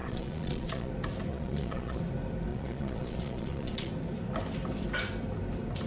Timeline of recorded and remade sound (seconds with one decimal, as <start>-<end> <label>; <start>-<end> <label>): 0.0-0.9 remade; 0.9-1.3 recorded; 1.3-2.0 remade; 2.0-2.5 recorded; 2.5-3.9 remade; 3.9-5.9 recorded